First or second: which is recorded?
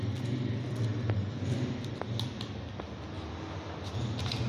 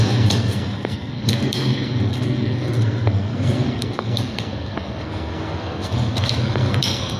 first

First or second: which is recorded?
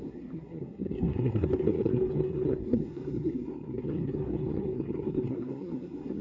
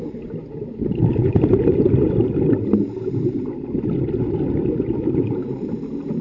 second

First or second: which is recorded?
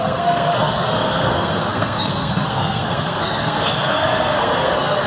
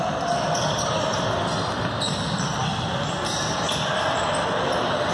second